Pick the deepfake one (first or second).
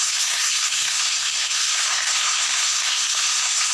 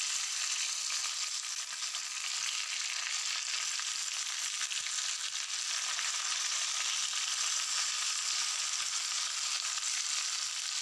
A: first